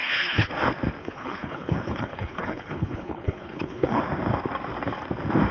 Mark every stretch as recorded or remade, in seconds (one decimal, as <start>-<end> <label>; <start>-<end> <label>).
0.0-0.5 remade; 0.5-1.0 recorded; 1.0-4.0 remade; 4.0-5.5 recorded